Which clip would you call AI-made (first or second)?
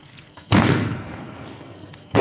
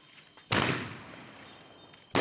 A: first